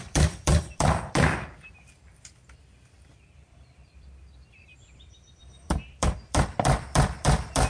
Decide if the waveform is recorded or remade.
remade